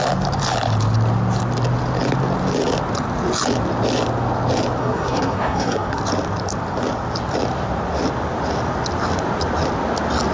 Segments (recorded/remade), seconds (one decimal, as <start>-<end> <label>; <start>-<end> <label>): 0.0-4.8 recorded; 4.8-6.0 remade; 6.0-10.3 recorded